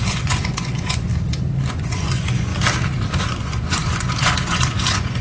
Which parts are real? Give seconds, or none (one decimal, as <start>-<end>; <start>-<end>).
1.1-1.7; 2.5-3.2

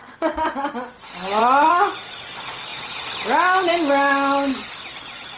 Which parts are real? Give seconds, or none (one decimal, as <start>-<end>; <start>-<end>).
1.7-5.4

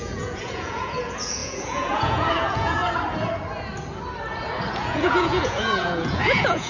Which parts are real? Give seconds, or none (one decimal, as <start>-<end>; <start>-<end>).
2.8-4.7

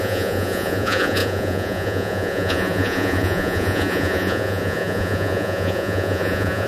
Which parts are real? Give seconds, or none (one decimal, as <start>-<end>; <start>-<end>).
none

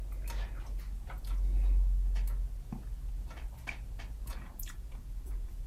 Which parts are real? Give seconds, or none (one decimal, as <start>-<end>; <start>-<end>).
0.0-4.3

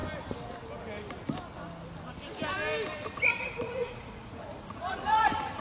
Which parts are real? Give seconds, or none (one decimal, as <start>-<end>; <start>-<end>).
0.0-3.4

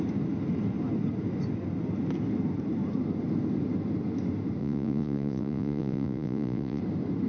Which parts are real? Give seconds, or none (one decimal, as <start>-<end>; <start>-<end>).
0.0-4.6; 6.8-7.3

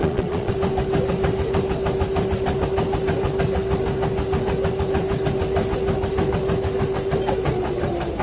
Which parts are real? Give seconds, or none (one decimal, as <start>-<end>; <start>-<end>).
0.5-8.2